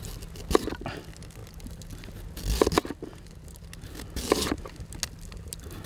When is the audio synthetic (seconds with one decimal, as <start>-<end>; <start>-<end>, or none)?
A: none